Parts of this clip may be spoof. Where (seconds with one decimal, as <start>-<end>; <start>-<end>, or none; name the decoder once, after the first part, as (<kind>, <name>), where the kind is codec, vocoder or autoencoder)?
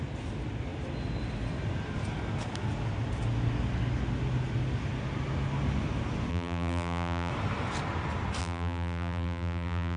6.3-7.3 (vocoder, BigVGAN v2); 8.4-10.0